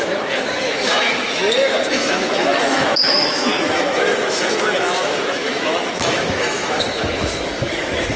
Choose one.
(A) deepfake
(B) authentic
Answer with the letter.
A